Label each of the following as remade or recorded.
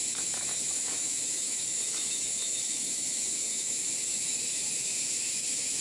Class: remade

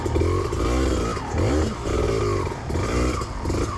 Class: recorded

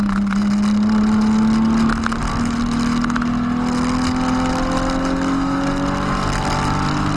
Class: recorded